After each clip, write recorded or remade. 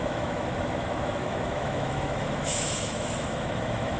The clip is remade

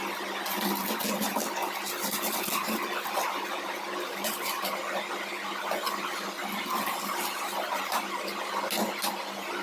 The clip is recorded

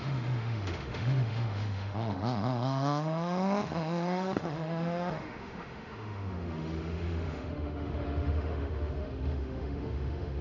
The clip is remade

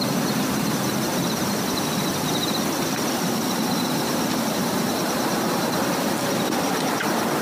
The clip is recorded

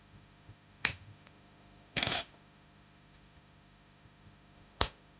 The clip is remade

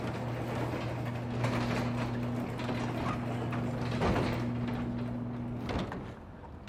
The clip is recorded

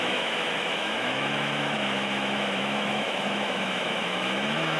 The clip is remade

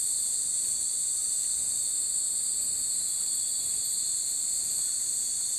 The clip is recorded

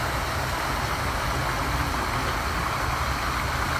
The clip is recorded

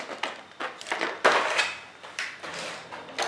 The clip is recorded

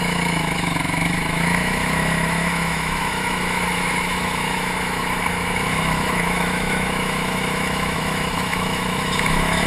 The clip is remade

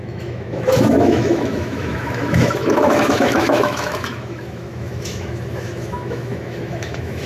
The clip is remade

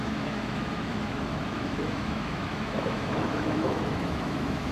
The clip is remade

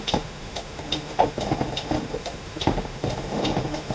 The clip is remade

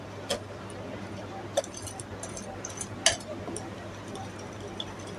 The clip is recorded